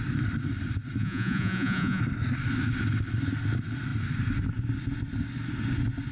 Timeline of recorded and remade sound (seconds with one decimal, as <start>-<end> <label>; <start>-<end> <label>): 0.0-1.0 recorded; 1.0-2.0 remade; 2.0-6.1 recorded